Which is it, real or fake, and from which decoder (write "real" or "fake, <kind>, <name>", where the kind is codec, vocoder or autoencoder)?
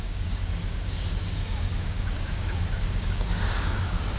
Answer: fake, codec, DAC